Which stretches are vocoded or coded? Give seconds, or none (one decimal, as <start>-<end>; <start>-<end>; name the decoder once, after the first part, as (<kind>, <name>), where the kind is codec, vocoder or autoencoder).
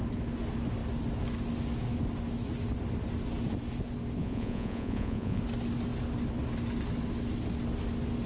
4.2-5.4 (vocoder, Vocos)